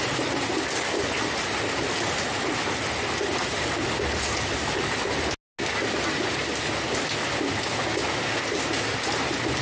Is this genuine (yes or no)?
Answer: yes